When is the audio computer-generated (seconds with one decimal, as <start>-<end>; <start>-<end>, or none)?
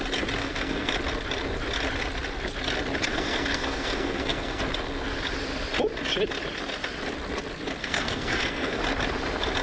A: 0.4-0.9; 3.1-4.6; 7.8-8.8